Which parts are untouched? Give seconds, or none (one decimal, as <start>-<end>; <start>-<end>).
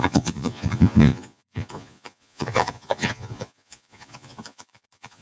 none